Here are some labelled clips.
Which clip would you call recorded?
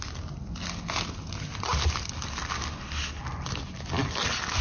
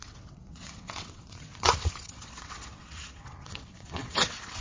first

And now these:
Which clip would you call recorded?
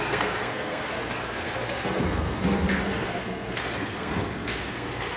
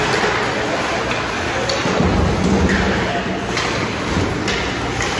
second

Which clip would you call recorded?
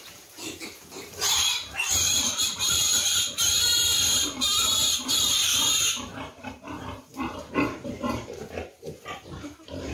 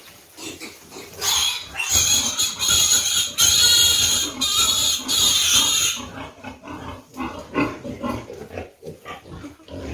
second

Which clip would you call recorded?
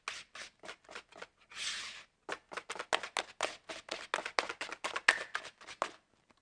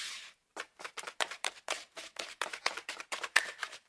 first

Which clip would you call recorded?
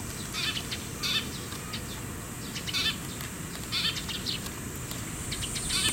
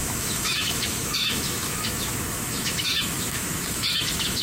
first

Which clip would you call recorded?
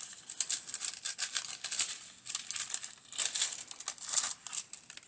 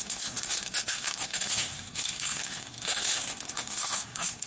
first